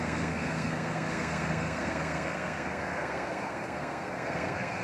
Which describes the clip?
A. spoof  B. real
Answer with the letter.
A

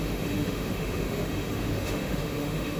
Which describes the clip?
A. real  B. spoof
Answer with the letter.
B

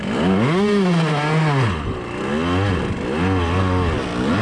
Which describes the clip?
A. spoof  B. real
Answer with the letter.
B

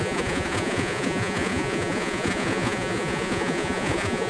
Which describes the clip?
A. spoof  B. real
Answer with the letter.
A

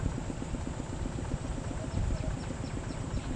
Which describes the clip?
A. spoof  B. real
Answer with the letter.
B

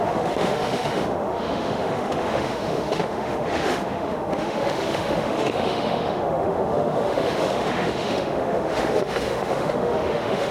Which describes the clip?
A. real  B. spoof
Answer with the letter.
B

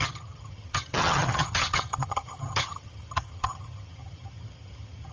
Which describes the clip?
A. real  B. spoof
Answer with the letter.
B